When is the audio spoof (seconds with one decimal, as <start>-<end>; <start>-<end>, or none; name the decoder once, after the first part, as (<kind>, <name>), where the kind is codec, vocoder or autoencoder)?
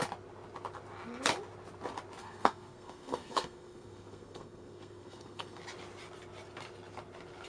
2.2-5.6 (codec, SNAC)